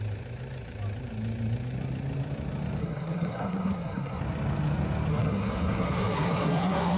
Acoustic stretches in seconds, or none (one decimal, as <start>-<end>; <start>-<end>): 0.0-2.8; 4.2-5.1